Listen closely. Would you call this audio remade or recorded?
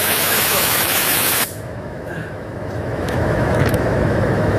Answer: remade